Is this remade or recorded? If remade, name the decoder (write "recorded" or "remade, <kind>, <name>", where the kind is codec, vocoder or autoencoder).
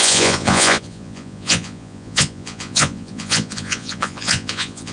remade, vocoder, Vocos